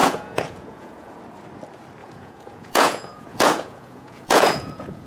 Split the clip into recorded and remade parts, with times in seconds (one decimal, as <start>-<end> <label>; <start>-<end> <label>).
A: 0.0-1.2 remade; 1.2-2.0 recorded; 2.0-5.1 remade